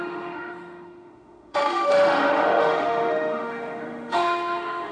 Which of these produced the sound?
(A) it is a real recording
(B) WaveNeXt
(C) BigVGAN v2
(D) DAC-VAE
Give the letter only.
D